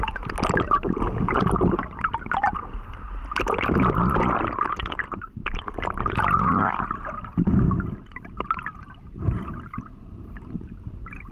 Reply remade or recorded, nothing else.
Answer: recorded